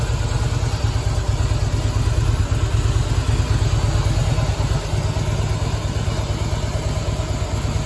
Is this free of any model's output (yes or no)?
yes